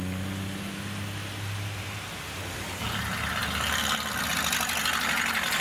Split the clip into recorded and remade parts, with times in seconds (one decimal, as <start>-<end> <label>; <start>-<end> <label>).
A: 0.0-5.6 recorded